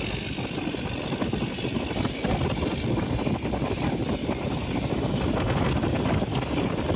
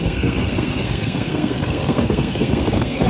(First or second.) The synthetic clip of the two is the second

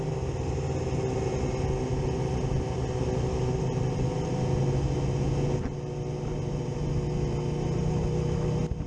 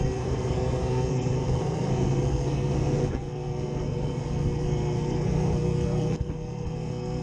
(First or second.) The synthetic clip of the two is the second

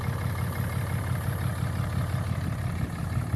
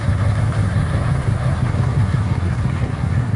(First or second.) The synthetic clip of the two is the second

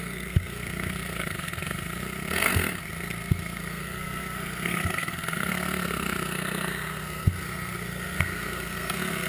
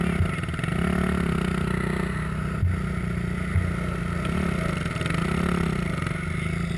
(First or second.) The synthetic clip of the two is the first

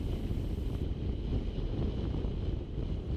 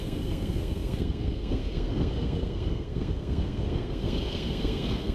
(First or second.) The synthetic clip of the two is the second